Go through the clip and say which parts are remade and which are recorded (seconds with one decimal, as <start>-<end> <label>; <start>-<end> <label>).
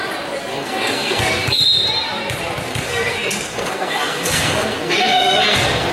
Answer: 0.0-0.5 recorded; 0.5-1.6 remade; 1.6-2.7 recorded; 2.7-5.9 remade